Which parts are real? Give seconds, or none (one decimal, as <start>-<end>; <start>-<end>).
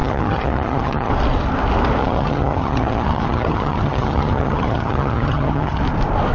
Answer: 1.1-2.0; 5.8-6.3